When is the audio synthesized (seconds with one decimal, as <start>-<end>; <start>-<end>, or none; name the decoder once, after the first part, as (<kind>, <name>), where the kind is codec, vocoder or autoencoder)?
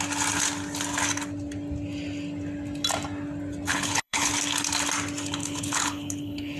3.7-4.3 (codec, HILCodec); 5.4-6.6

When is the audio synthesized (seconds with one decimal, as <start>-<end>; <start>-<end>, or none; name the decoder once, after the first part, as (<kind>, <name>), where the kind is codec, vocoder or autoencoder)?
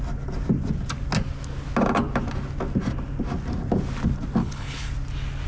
4.4-4.9 (codec, HILCodec)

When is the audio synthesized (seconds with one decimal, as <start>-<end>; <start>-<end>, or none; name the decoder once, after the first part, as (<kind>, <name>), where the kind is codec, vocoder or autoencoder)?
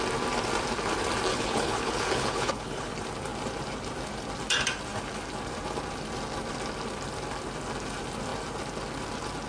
1.3-2.9 (codec, HILCodec)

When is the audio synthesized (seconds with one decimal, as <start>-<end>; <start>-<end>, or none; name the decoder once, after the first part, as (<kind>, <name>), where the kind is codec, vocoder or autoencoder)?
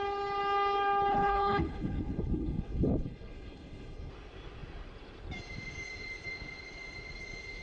1.1-4.1 (codec, HILCodec)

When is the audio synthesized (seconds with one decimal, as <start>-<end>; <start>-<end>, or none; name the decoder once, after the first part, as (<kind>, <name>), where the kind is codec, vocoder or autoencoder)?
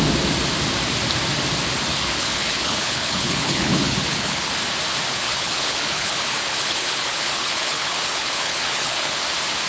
1.9-4.5 (codec, HILCodec); 5.1-9.2